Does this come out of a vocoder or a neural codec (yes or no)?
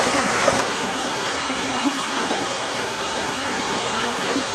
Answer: yes